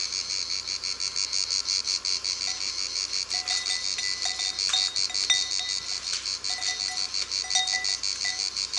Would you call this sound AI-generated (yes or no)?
no